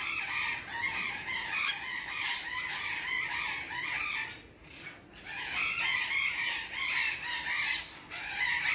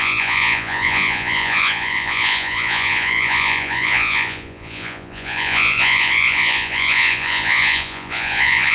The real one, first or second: first